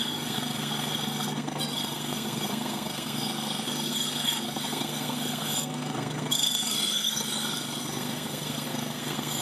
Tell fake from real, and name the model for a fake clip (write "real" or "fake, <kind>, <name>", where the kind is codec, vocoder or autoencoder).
fake, codec, SNAC